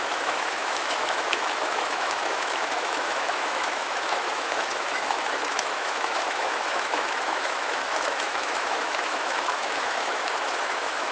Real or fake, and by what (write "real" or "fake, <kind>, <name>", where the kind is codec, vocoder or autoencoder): fake, autoencoder, DAC-VAE